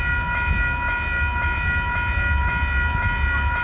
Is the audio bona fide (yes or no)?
yes